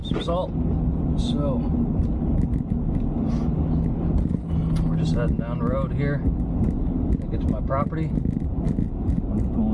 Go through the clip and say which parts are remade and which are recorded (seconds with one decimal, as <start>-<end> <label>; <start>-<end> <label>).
0.0-9.7 recorded